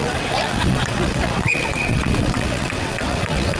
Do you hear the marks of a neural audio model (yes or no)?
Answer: yes